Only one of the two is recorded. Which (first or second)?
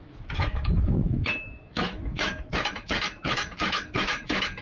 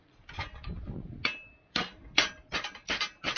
second